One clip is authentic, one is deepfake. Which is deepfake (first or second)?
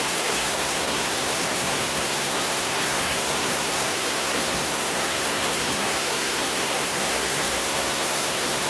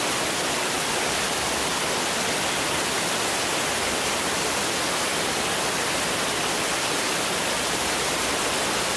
first